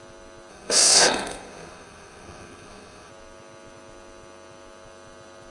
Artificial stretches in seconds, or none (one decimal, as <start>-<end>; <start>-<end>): 0.5-3.1